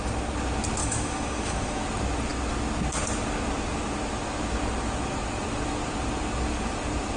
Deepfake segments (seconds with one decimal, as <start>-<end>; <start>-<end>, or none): 0.8-1.8